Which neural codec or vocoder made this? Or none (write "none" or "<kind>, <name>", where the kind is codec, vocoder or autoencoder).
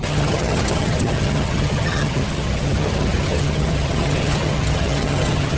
vocoder, HiFi-GAN